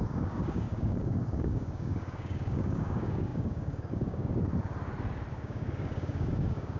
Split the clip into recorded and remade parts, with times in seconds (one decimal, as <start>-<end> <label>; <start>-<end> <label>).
0.0-4.5 remade; 4.5-5.3 recorded; 5.3-6.8 remade